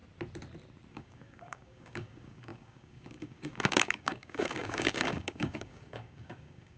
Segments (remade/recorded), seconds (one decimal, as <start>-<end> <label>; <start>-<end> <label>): 0.0-0.9 recorded; 0.9-6.8 remade